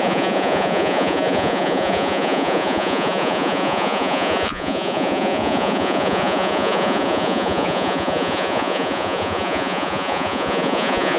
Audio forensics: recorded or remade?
remade